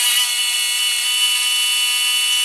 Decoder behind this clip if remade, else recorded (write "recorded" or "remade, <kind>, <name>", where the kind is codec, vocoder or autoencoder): recorded